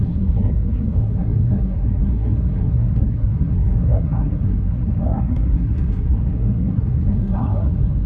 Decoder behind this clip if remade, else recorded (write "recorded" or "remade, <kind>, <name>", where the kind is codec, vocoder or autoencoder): remade, codec, SNAC